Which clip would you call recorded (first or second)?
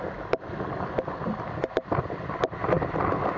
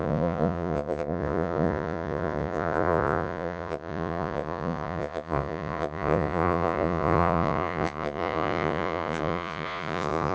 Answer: first